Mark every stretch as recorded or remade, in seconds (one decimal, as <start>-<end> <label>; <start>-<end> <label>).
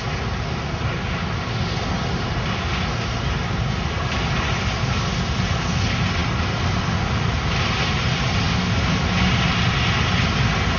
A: 0.0-10.8 recorded